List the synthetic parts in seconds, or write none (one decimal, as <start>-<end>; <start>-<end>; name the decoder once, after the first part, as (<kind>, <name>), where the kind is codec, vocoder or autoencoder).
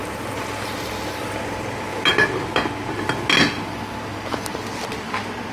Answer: 0.0-1.1 (vocoder, BigVGAN v2)